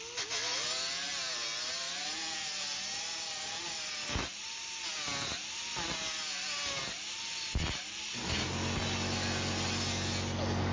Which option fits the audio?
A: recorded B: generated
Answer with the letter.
A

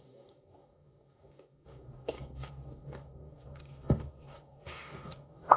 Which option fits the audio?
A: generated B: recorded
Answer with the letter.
A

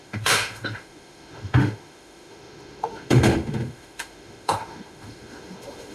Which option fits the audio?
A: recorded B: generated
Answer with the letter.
B